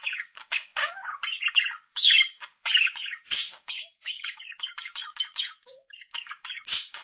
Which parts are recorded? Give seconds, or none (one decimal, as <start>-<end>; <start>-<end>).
none